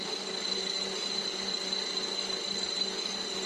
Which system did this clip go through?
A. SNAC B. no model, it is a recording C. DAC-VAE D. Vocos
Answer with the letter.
B